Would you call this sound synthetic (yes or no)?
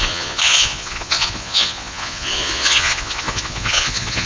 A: yes